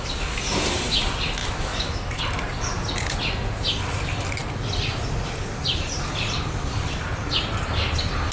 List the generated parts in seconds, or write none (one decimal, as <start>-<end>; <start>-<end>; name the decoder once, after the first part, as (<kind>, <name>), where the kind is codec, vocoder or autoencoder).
1.4-2.2 (autoencoder, DAC-VAE)